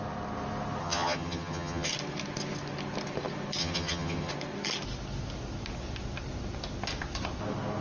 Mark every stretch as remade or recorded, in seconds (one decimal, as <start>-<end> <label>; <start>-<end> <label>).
0.0-0.8 recorded; 0.8-1.9 remade; 1.9-3.6 recorded; 3.6-4.3 remade; 4.3-7.8 recorded